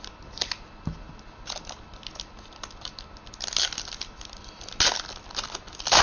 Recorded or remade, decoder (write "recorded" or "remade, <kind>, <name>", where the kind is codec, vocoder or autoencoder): recorded